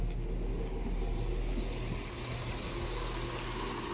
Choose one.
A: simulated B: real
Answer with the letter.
B